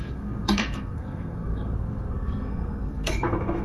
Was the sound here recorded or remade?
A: remade